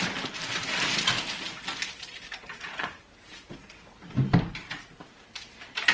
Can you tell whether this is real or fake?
real